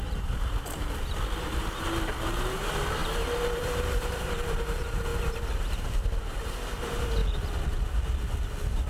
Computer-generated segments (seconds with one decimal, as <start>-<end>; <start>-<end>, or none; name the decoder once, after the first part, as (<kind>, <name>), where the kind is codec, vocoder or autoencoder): 0.0-7.2 (vocoder, BigVGAN v2)